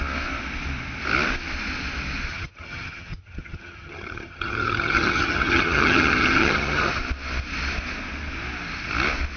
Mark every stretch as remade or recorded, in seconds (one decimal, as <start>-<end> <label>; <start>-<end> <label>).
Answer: 0.0-2.3 recorded; 2.3-7.0 remade; 7.0-9.4 recorded